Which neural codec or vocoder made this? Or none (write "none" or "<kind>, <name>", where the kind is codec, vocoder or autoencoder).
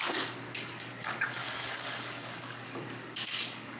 codec, DAC